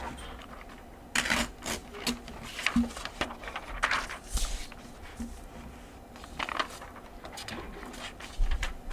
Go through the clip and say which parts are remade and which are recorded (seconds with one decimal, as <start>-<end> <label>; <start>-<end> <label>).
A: 0.0-8.9 recorded